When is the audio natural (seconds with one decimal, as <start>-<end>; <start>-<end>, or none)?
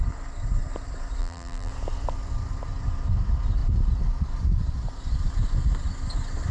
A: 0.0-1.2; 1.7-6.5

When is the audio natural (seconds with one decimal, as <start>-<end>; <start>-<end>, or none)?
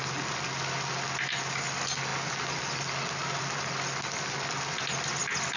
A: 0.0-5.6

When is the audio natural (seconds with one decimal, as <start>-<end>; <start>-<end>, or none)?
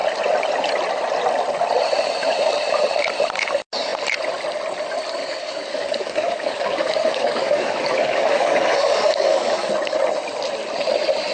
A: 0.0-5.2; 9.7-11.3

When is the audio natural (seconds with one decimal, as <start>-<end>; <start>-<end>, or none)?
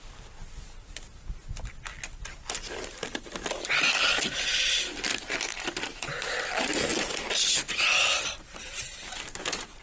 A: 0.0-6.9; 8.8-9.8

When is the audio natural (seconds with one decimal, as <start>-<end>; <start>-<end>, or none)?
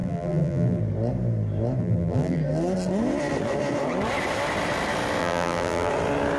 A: 0.8-1.8; 2.4-5.2; 5.9-6.4